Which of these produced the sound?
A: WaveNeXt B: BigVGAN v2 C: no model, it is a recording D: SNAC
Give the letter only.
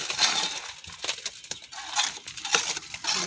C